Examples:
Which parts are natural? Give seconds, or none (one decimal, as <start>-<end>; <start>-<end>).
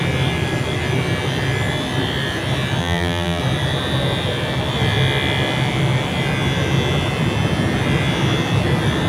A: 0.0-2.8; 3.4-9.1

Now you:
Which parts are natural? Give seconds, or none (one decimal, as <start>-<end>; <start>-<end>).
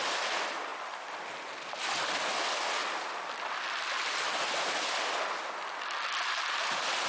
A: 0.0-7.1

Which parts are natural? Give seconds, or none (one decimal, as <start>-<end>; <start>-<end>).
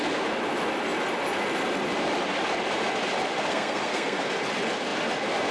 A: 0.0-3.5; 4.3-5.5